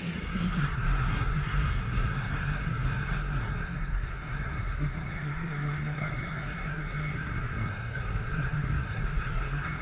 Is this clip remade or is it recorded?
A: remade